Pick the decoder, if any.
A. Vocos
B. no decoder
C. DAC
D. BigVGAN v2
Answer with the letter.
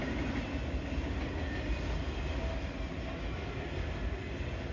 B